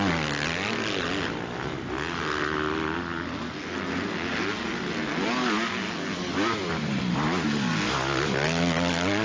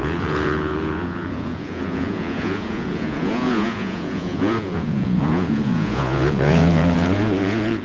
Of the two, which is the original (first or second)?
first